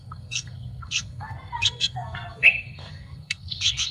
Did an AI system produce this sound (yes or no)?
yes